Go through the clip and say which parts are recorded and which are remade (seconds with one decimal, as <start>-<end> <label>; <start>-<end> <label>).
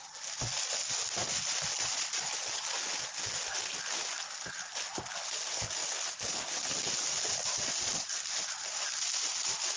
0.0-9.8 recorded